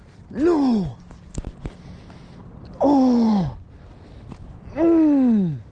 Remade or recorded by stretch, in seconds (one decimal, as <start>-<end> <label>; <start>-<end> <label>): 0.0-5.7 recorded